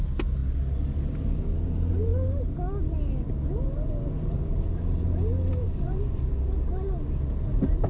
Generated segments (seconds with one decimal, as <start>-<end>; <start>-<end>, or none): 5.6-6.2